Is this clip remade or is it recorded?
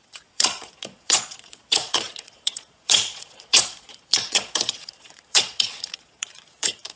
remade